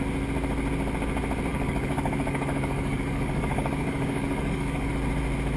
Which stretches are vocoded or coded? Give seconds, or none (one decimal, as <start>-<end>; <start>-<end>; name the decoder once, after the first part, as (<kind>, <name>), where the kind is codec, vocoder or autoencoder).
1.5-4.9 (codec, DAC)